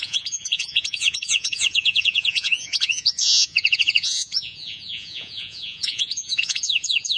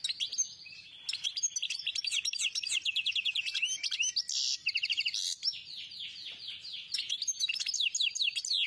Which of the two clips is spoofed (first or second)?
first